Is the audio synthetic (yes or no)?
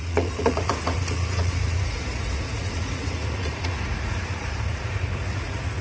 yes